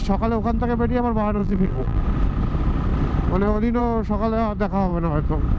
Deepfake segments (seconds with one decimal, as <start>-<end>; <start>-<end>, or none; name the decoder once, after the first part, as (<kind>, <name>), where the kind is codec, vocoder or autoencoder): 1.4-2.0 (vocoder, BigVGAN v2)